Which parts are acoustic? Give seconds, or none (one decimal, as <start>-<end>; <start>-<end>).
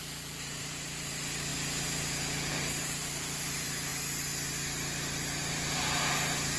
1.5-2.5; 3.9-5.4